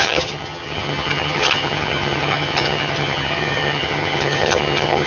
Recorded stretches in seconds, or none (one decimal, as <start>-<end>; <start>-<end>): none